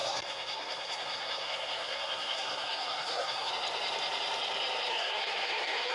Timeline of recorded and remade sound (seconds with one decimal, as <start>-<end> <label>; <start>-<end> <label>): 0.0-3.5 remade; 3.5-4.9 recorded; 4.9-5.9 remade